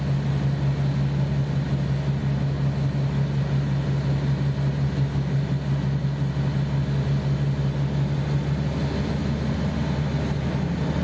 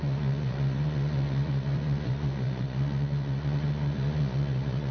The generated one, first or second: second